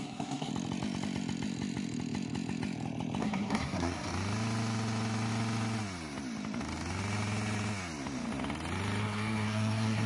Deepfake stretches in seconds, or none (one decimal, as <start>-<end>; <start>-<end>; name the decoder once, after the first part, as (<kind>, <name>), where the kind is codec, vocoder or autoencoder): 0.0-0.5 (codec, SNAC); 3.2-4.1; 9.0-10.1